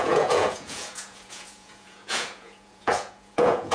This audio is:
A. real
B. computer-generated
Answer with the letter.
B